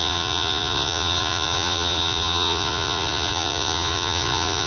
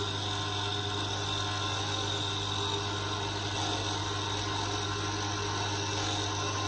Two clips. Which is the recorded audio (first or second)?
second